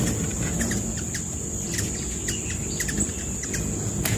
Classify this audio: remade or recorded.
recorded